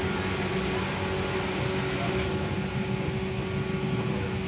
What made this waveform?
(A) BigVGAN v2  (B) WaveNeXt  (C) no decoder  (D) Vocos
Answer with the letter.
C